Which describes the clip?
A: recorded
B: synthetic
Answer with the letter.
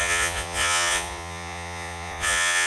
B